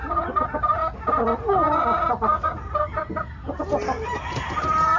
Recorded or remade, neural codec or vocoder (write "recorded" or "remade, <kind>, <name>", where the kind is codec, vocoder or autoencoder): recorded